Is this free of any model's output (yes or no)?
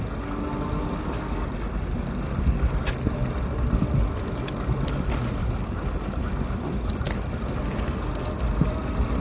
yes